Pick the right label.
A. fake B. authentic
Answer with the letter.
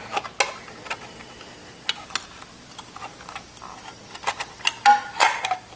B